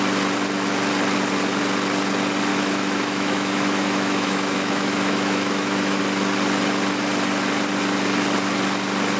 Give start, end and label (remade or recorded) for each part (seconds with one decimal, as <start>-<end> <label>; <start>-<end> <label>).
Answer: 0.0-2.5 recorded; 2.5-6.0 remade; 6.0-9.2 recorded